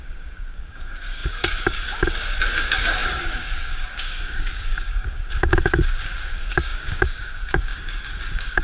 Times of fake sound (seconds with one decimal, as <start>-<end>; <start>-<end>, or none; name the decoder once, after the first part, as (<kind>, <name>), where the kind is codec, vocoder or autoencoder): 0.0-8.6 (codec, DAC)